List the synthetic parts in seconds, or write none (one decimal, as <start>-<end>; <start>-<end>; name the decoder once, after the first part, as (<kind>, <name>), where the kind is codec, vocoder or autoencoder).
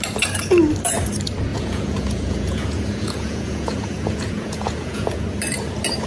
1.5-5.2 (vocoder, Vocos)